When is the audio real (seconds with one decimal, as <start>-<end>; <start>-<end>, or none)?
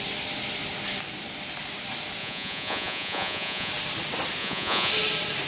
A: 0.0-2.2; 3.7-4.4; 4.9-5.5